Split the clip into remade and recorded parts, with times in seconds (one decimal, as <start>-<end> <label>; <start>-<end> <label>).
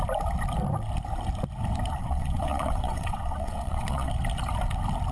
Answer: 0.0-2.0 recorded; 2.0-4.1 remade; 4.1-5.1 recorded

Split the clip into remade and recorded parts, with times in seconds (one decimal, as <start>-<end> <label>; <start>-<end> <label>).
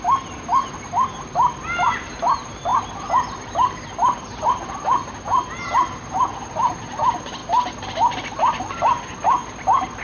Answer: 0.0-2.7 recorded; 2.7-4.5 remade; 4.5-7.4 recorded; 7.4-10.0 remade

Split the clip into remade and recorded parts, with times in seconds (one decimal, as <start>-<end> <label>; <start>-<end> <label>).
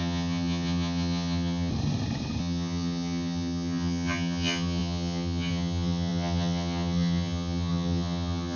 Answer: 0.0-1.7 remade; 1.7-2.4 recorded; 2.4-8.6 remade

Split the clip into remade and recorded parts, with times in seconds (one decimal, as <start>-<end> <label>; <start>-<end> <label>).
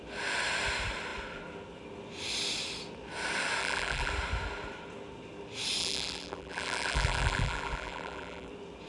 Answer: 0.0-3.6 recorded; 3.6-4.1 remade; 4.1-5.8 recorded; 5.8-8.5 remade; 8.5-8.9 recorded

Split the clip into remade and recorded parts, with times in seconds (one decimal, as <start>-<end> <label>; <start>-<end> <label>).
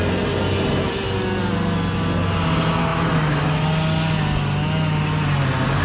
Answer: 0.0-5.8 recorded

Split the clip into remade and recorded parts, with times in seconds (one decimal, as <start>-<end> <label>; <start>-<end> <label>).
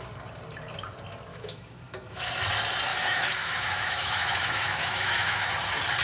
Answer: 0.0-1.3 recorded; 1.3-2.3 remade; 2.3-2.9 recorded; 2.9-5.5 remade; 5.5-6.0 recorded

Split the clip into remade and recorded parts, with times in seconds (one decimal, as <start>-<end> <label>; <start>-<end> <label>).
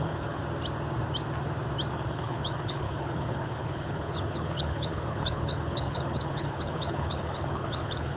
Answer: 0.0-0.4 remade; 0.4-1.9 recorded; 1.9-8.2 remade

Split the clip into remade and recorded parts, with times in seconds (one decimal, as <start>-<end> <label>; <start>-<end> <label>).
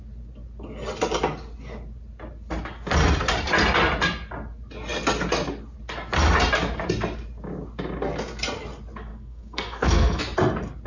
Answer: 0.0-9.1 recorded; 9.1-10.2 remade; 10.2-10.9 recorded